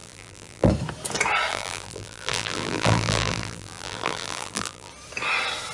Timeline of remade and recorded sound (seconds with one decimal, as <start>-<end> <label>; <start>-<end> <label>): 0.0-0.7 remade; 0.7-1.5 recorded; 1.5-4.9 remade; 4.9-5.7 recorded